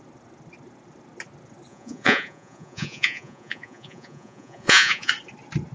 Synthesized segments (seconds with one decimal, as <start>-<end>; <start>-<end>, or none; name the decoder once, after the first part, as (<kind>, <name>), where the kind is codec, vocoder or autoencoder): 1.7-5.1 (vocoder, Vocos)